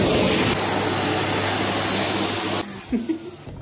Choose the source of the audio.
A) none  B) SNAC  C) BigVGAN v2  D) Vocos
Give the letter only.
A